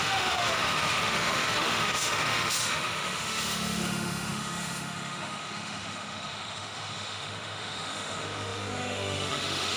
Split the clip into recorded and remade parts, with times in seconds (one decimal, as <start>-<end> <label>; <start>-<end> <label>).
0.0-9.8 remade